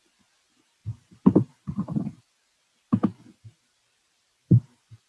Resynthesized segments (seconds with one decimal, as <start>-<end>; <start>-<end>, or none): 0.8-2.2; 3.1-5.1